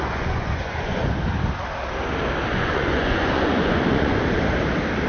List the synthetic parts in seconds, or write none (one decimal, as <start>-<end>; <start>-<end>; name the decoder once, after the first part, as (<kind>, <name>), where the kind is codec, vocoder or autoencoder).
0.0-1.0 (vocoder, Vocos); 2.5-4.2